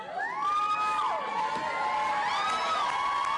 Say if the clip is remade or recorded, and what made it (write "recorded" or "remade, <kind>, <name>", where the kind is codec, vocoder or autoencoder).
recorded